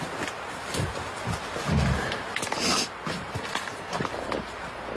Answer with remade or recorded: recorded